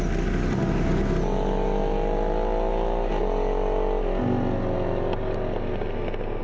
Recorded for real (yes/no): yes